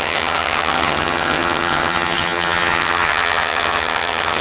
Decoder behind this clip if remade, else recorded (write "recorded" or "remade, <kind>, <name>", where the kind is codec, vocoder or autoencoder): remade, vocoder, HiFi-GAN